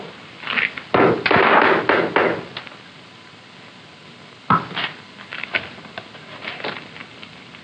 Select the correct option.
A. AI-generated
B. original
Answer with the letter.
B